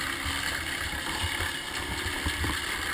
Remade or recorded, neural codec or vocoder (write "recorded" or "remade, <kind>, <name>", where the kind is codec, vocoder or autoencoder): remade, vocoder, BigVGAN v2